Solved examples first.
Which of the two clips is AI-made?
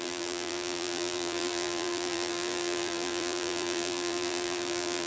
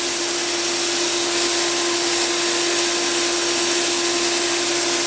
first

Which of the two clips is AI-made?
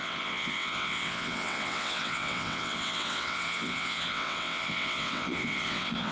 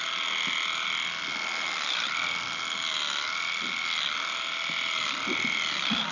first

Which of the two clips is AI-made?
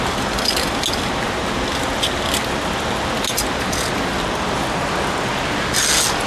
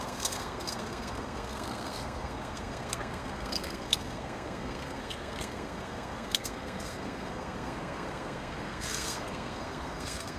second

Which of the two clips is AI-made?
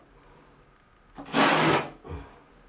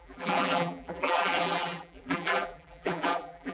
second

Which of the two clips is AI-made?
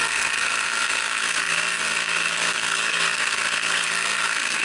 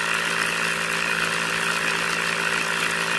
first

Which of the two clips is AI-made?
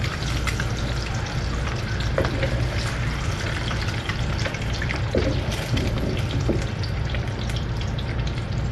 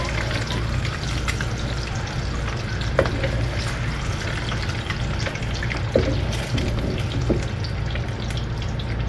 first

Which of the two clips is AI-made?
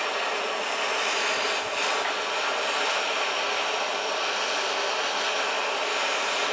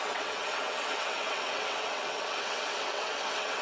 second